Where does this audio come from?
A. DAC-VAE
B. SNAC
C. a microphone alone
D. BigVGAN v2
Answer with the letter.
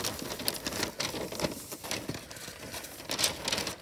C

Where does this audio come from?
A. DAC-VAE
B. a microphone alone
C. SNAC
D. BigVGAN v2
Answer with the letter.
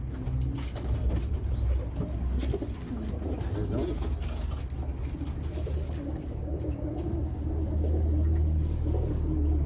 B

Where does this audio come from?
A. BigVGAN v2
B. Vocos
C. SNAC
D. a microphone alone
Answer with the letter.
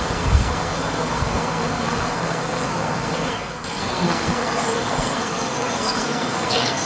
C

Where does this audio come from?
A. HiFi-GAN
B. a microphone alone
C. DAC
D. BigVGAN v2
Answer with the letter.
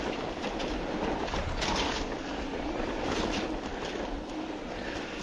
B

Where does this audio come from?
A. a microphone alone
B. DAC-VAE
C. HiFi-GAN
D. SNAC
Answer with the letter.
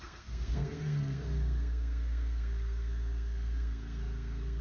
D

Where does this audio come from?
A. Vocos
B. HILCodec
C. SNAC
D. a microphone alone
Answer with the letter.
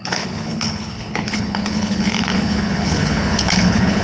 B